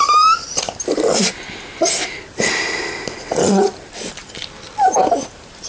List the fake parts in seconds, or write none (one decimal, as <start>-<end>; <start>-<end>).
none